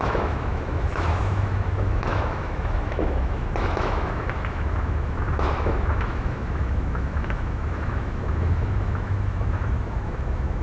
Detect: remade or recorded remade